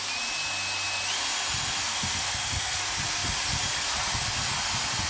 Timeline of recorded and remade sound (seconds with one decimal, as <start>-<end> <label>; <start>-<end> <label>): 0.0-1.8 recorded; 1.8-2.8 remade; 2.8-5.1 recorded